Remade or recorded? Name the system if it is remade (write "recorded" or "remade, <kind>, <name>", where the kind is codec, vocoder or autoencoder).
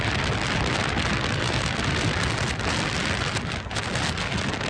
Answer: recorded